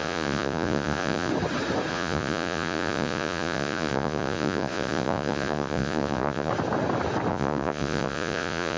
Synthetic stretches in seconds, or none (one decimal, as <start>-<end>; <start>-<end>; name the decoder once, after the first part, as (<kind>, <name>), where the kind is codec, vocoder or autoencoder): 0.0-1.3 (vocoder, Vocos); 1.9-6.5; 7.3-8.8